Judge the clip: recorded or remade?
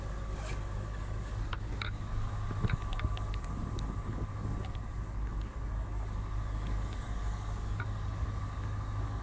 remade